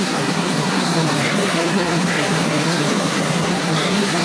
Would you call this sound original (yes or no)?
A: no